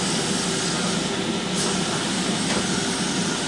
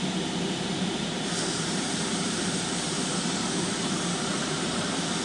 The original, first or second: first